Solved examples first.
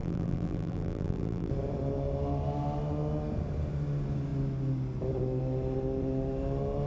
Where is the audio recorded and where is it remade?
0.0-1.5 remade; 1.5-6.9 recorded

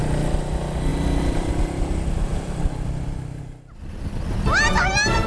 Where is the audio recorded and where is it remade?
0.0-0.9 recorded; 0.9-1.5 remade; 1.5-2.3 recorded; 2.3-3.4 remade; 3.4-5.3 recorded

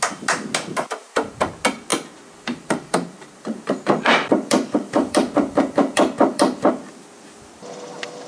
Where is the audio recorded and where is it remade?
0.0-1.0 recorded; 1.0-1.5 remade; 1.5-1.9 recorded; 1.9-6.7 remade; 6.7-8.3 recorded

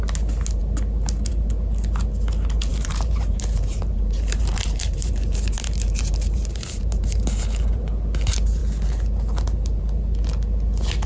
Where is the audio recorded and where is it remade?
0.0-2.7 recorded; 2.7-7.9 remade; 7.9-11.1 recorded